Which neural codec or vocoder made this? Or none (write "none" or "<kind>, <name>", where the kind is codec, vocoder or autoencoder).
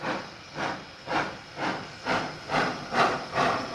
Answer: none